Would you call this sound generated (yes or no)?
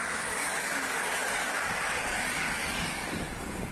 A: yes